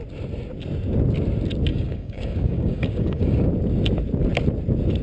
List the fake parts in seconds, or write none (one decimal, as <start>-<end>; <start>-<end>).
1.7-3.5